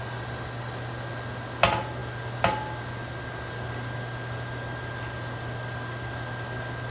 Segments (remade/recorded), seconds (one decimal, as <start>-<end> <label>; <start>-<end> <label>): 0.0-6.9 recorded